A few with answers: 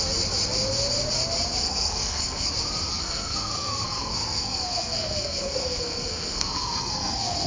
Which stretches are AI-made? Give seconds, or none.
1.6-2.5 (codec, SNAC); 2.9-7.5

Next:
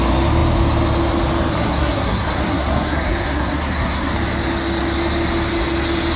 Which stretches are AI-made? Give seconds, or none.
1.5-4.1 (codec, SNAC)